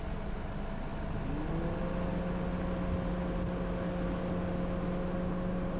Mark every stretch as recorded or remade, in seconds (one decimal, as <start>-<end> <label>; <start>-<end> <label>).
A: 0.0-5.8 recorded